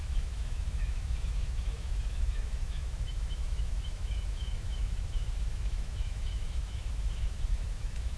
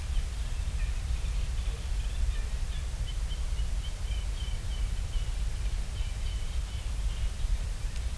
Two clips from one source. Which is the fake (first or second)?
first